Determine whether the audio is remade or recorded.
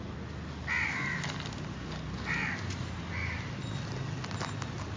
recorded